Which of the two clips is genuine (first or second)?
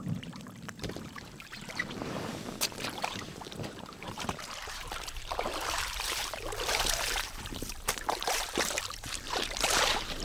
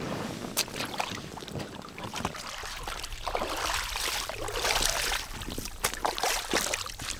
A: second